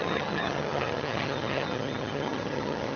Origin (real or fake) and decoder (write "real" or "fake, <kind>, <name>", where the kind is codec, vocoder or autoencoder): fake, vocoder, HiFi-GAN